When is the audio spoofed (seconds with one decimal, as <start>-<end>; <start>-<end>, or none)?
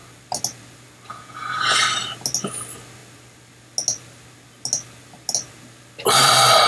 1.1-1.8